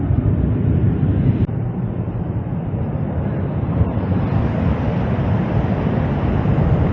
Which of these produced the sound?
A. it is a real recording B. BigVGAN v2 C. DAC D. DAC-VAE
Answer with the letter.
A